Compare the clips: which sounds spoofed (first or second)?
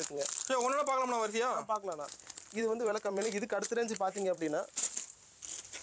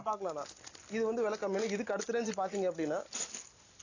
first